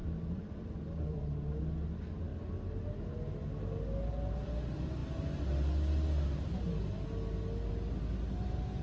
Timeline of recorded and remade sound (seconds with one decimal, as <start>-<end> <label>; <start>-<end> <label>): 0.0-1.4 remade; 1.4-8.8 recorded